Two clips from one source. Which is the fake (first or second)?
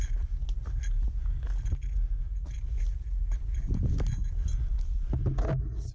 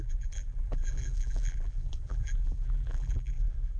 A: second